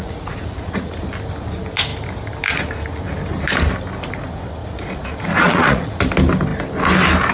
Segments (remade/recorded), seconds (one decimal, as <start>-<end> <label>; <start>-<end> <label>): 0.0-0.9 remade; 0.9-4.6 recorded; 4.6-6.0 remade; 6.0-7.3 recorded